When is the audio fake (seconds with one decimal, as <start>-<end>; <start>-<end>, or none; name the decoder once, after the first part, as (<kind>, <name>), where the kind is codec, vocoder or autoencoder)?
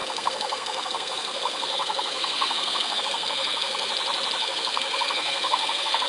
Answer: 0.0-3.9 (codec, SNAC); 4.4-6.1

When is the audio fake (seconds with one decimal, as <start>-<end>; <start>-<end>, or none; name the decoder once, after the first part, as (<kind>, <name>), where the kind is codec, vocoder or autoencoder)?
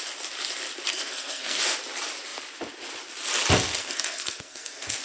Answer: 0.9-1.6 (codec, SNAC); 3.7-5.0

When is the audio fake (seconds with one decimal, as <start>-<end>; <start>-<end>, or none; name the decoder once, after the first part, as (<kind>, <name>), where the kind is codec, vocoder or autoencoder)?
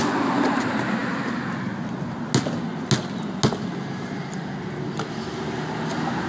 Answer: none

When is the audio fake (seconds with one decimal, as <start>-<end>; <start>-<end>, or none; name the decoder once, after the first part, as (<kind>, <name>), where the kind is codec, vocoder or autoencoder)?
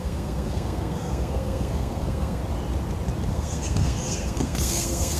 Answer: 0.0-2.4 (codec, SNAC); 3.3-5.2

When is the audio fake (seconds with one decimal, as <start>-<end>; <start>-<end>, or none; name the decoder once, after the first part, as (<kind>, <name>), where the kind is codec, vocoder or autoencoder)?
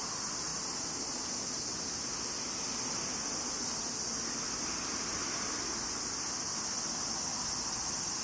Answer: none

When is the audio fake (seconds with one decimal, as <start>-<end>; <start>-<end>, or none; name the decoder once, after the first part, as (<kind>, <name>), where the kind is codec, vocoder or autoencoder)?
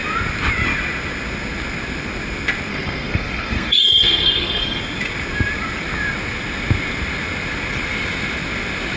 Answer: 2.7-4.8 (codec, SNAC)